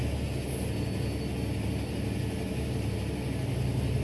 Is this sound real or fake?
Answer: real